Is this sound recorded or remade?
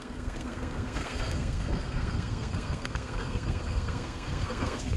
remade